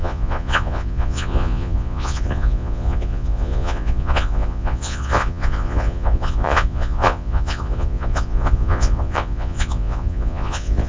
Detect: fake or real fake